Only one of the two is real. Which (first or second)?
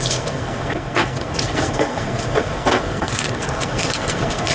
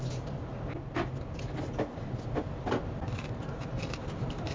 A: second